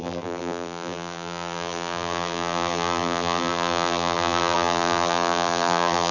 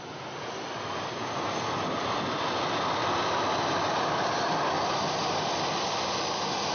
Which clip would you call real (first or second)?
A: second